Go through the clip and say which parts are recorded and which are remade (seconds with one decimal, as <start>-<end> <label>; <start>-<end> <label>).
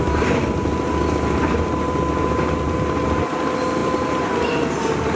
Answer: 0.0-3.8 recorded; 3.8-4.4 remade; 4.4-5.2 recorded